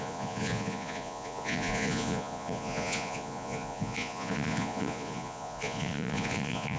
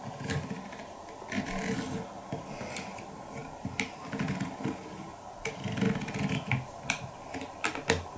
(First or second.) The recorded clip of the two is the second